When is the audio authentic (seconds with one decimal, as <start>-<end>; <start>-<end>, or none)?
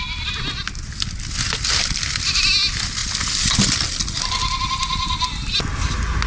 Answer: 0.0-6.3